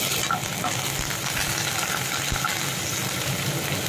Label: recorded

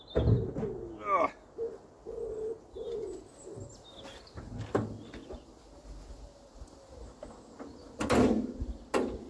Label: recorded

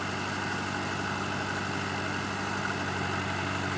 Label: recorded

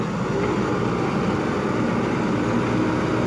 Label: recorded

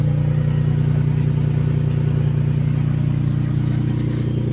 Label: recorded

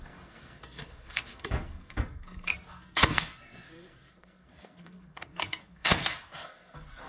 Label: remade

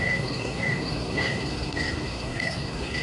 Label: remade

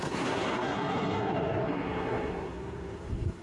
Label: remade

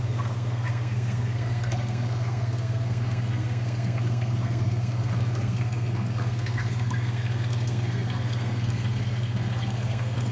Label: remade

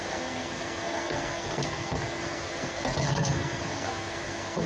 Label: remade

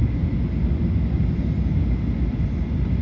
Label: recorded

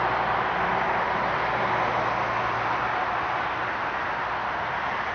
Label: recorded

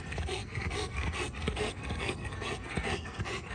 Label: remade